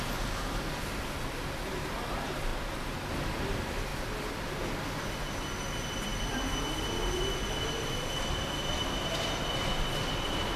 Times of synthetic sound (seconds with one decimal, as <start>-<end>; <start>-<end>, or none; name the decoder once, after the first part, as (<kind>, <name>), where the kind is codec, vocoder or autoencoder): 3.9-4.5 (vocoder, BigVGAN v2)